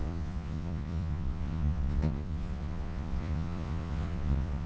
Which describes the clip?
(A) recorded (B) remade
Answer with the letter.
B